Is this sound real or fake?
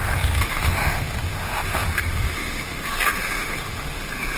fake